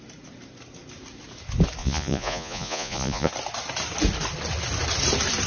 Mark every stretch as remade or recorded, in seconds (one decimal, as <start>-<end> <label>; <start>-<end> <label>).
0.0-1.8 recorded; 1.8-3.3 remade; 3.3-5.5 recorded